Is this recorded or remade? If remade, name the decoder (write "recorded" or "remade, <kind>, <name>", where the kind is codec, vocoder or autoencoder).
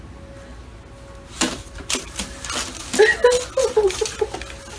recorded